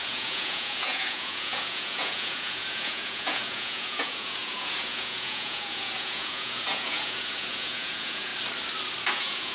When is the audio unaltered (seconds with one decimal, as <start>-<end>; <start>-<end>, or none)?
8.3-9.1